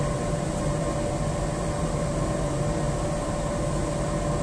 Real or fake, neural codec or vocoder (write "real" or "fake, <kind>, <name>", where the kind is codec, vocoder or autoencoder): real